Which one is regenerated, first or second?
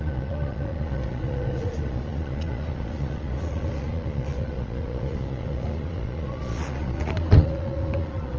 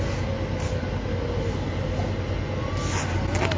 first